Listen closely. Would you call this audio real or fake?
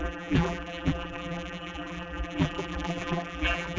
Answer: fake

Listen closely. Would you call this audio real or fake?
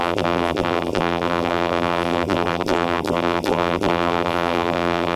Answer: fake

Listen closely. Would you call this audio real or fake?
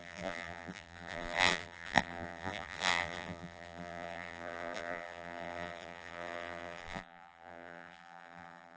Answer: fake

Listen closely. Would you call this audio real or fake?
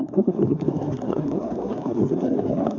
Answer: fake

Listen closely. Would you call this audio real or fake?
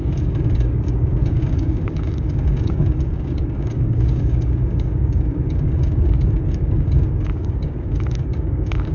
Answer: fake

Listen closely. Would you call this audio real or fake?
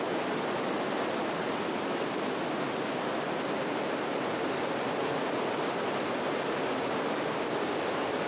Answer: real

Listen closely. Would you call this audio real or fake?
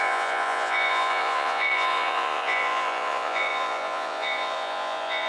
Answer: fake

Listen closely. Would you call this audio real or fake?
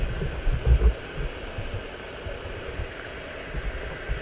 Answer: real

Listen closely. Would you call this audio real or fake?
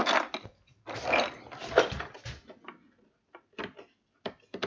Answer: real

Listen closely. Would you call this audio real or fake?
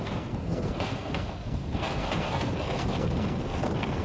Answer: fake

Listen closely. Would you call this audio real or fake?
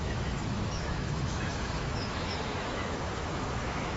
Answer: fake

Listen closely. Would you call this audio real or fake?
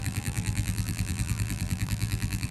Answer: fake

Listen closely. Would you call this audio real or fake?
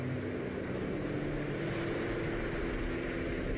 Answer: real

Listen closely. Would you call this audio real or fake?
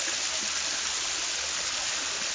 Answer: real